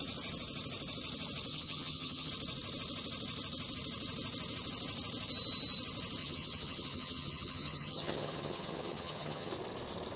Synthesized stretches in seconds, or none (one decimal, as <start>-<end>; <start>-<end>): 1.5-2.3; 6.2-9.5